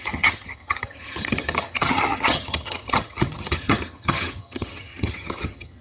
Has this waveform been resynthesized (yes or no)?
yes